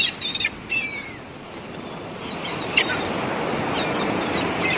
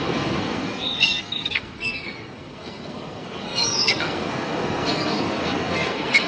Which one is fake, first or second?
second